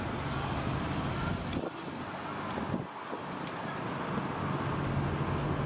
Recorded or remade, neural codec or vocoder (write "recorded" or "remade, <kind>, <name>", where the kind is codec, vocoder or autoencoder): recorded